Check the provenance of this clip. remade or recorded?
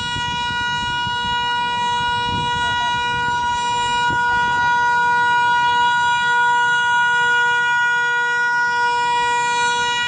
recorded